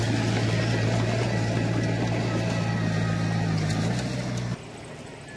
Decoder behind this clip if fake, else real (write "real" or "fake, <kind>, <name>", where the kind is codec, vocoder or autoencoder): real